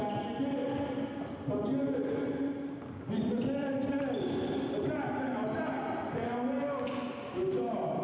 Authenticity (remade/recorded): recorded